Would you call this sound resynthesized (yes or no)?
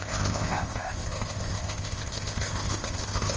yes